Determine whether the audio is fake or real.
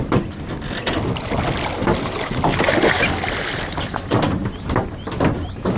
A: real